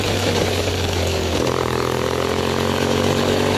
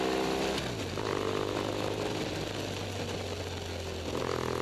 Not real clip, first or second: first